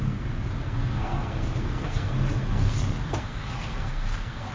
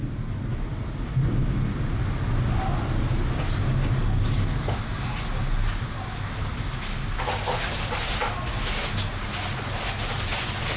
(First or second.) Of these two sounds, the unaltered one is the second